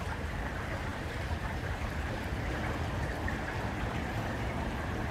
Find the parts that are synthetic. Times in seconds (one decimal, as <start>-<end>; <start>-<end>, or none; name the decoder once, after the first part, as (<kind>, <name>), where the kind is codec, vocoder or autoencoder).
0.9-1.9 (vocoder, BigVGAN v2)